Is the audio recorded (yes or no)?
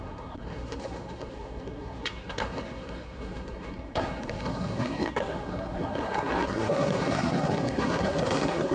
no